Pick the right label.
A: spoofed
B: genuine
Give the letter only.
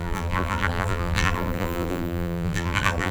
A